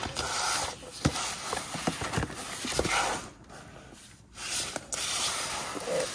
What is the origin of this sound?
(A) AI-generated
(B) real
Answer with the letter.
B